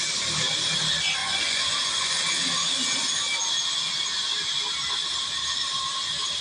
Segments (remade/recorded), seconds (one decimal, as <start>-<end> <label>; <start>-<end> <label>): 0.0-1.2 recorded; 1.2-2.2 remade; 2.2-6.4 recorded